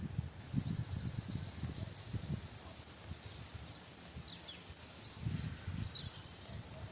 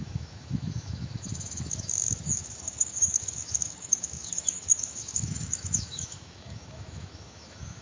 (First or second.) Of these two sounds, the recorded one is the first